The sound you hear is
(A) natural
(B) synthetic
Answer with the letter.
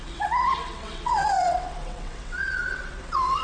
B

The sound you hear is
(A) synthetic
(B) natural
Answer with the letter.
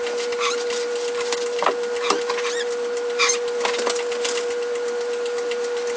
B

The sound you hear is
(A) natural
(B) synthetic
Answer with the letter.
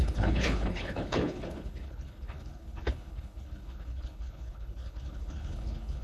B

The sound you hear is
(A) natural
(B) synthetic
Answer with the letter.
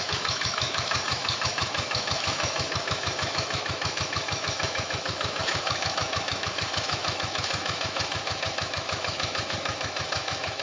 B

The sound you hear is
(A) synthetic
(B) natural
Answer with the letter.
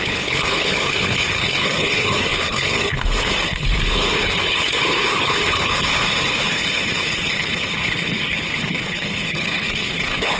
A